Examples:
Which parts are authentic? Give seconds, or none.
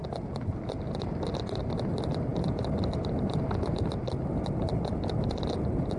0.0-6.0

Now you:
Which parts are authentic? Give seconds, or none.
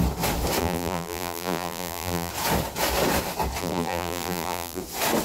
0.0-0.6; 2.3-3.6; 4.8-5.2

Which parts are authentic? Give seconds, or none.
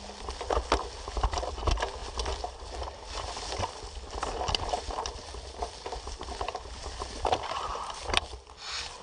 0.0-9.0